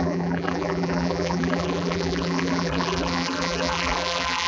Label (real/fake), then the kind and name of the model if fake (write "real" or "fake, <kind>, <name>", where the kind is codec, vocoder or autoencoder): fake, vocoder, BigVGAN v2